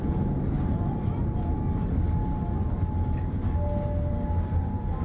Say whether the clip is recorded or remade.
recorded